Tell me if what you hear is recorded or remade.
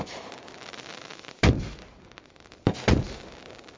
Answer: recorded